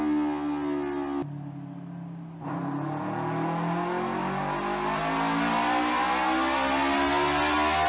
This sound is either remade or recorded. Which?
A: recorded